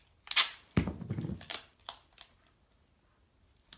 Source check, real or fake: real